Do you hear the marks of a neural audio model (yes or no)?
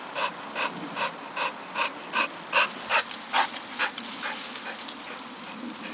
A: no